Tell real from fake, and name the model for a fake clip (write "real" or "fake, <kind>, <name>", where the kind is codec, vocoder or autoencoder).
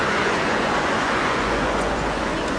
fake, vocoder, Vocos